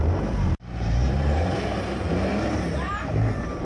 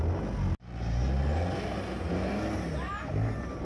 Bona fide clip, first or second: second